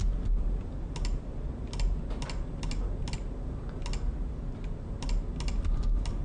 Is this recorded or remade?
recorded